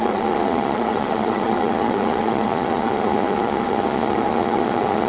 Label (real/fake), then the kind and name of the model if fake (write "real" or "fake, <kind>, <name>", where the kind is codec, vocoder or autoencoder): fake, vocoder, Vocos